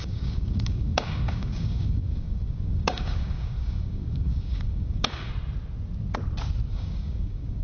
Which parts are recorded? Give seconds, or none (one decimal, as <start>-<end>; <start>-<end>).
5.3-6.7